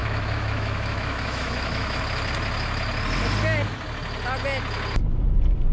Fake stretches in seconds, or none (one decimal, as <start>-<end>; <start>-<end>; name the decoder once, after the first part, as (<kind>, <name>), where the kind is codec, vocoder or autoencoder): 0.0-2.0 (autoencoder, DAC-VAE)